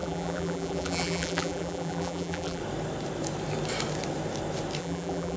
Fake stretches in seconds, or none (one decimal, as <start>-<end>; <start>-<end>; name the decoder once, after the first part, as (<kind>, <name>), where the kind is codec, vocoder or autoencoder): 0.0-2.6 (vocoder, BigVGAN v2); 4.8-5.4